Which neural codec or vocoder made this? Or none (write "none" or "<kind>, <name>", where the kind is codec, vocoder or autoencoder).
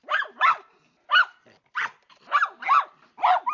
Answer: none